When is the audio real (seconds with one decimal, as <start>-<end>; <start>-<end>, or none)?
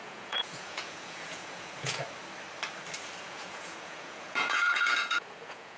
2.0-3.2